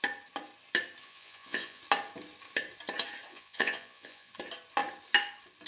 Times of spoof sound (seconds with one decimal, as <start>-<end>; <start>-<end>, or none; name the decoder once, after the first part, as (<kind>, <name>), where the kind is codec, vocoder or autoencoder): 1.0-1.8 (vocoder, Vocos); 3.3-4.3